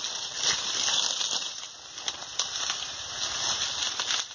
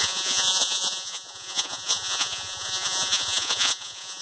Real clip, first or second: first